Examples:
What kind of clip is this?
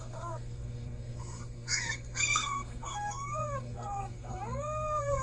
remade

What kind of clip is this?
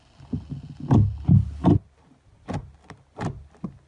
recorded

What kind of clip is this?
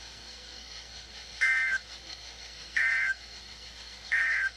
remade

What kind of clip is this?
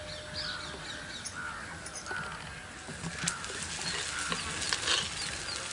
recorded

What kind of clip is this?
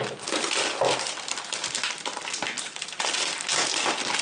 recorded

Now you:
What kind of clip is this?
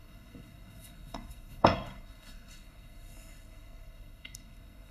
remade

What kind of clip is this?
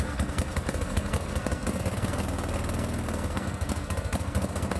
remade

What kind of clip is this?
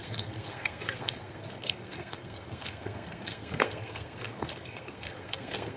remade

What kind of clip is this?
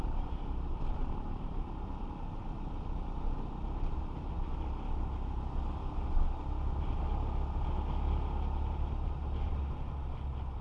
recorded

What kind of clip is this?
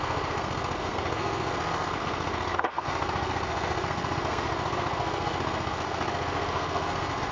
remade